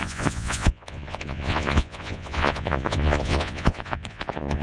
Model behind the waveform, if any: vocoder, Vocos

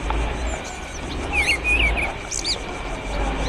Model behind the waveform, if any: none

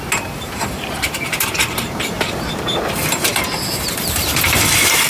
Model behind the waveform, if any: vocoder, BigVGAN v2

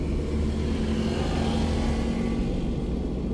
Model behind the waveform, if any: none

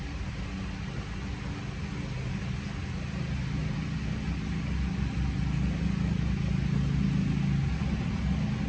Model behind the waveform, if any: none